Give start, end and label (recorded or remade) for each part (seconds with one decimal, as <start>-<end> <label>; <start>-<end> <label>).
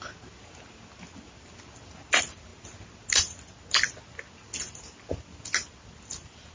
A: 0.0-6.5 recorded